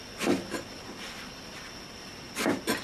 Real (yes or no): yes